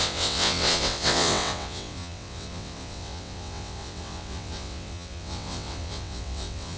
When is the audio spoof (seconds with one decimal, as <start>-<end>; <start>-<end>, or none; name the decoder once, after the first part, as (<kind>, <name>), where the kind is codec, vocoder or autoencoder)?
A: 0.0-6.8 (vocoder, WaveNeXt)